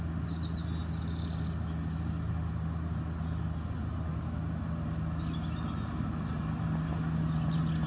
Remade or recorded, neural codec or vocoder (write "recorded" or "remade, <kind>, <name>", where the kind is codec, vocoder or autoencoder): recorded